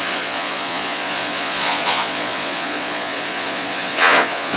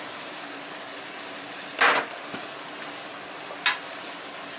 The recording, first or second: second